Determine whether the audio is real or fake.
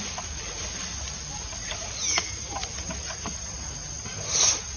real